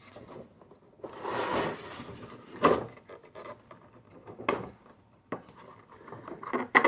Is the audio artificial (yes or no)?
no